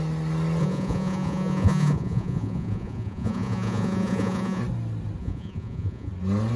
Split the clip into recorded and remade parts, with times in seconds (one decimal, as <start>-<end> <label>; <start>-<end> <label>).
0.0-0.6 recorded; 0.6-4.6 remade; 4.6-5.2 recorded; 5.2-6.1 remade; 6.1-6.6 recorded